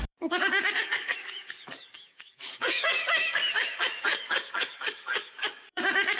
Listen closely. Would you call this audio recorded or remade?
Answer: remade